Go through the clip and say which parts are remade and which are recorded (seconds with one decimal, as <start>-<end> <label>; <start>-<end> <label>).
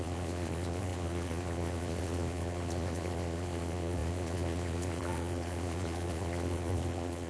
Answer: 0.0-7.3 remade